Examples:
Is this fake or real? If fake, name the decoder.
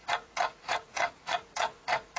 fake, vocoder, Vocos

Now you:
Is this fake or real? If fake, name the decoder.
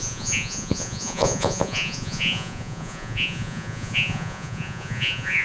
fake, vocoder, Vocos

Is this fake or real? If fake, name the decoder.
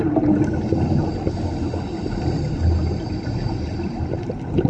real